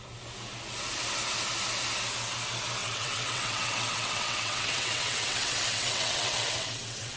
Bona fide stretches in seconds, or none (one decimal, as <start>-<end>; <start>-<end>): 0.0-2.8